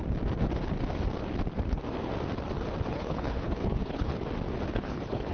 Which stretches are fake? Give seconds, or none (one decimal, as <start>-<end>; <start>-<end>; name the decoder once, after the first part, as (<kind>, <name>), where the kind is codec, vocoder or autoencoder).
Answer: 2.9-4.1 (codec, HILCodec); 4.7-5.3